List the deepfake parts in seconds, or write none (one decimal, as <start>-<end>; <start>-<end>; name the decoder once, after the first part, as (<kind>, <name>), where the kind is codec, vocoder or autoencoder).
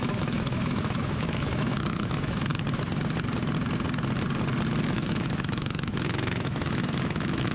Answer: 0.0-2.5 (autoencoder, DAC-VAE); 4.8-7.5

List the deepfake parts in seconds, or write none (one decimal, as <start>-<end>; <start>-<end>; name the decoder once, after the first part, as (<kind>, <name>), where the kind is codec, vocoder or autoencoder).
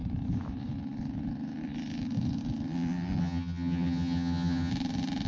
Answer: 3.2-4.7 (vocoder, HiFi-GAN)